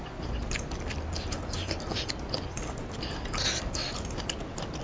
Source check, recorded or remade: recorded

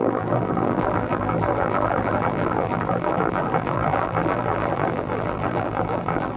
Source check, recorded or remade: remade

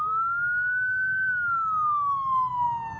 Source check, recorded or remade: recorded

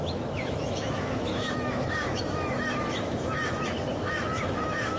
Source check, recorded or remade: remade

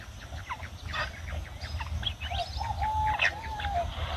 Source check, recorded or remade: recorded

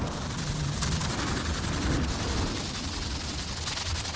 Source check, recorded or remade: recorded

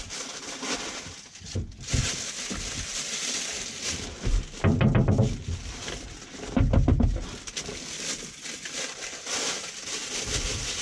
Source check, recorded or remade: recorded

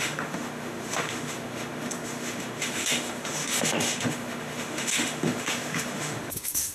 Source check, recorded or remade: remade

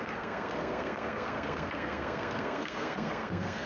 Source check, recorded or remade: remade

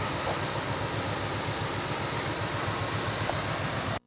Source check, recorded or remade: recorded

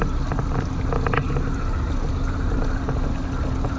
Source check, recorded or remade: recorded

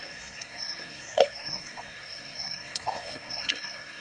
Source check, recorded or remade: remade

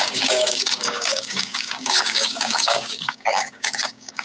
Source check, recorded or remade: remade